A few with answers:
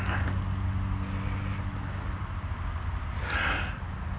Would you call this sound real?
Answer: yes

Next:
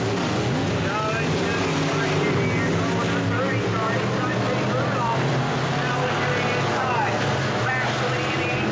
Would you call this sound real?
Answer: yes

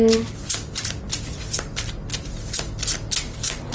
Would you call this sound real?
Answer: yes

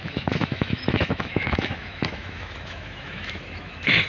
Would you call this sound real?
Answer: no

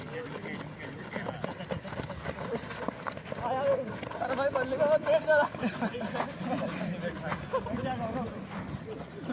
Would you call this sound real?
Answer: yes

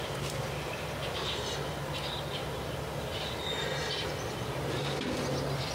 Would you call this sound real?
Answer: yes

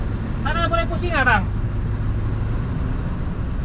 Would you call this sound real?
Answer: yes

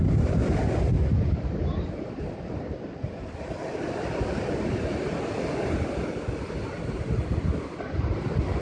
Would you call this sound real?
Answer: no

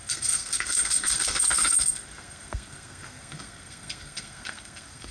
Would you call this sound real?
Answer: no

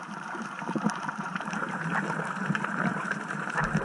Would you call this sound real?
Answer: no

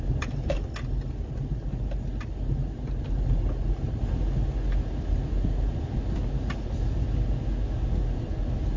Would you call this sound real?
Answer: yes